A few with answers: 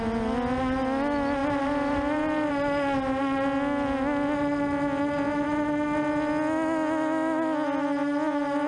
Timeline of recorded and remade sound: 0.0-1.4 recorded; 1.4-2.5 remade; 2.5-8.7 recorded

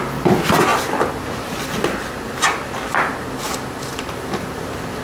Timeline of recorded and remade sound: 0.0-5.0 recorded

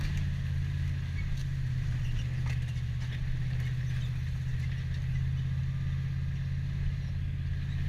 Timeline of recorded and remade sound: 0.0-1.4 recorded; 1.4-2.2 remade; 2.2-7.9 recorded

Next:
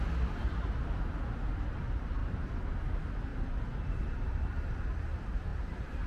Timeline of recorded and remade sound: 0.0-2.2 recorded; 2.2-2.9 remade; 2.9-3.3 recorded; 3.3-4.6 remade; 4.6-5.5 recorded; 5.5-6.1 remade